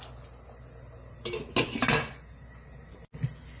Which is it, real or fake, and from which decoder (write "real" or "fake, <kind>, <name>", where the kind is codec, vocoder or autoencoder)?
real